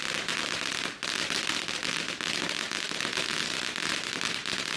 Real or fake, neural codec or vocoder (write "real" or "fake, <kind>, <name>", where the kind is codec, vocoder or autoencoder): real